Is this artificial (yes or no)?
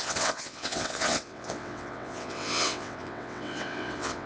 yes